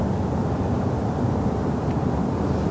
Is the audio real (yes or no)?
yes